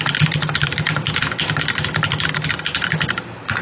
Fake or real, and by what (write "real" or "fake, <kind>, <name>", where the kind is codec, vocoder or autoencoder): real